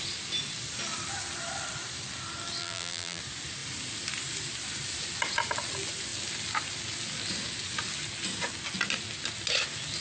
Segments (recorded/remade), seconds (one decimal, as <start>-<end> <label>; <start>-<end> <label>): 0.0-2.6 recorded; 2.6-3.2 remade; 3.2-10.0 recorded